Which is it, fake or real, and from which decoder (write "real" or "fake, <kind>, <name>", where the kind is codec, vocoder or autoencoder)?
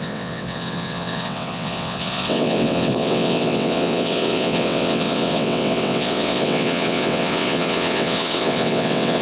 fake, vocoder, WaveNeXt